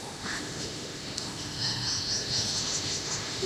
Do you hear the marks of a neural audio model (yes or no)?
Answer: yes